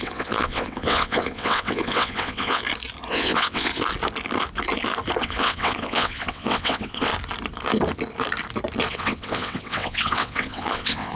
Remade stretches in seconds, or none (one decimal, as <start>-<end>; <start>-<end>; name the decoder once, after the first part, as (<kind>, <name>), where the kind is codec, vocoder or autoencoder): 0.0-2.6 (vocoder, WaveNeXt); 3.1-3.7; 5.2-7.1; 8.9-11.2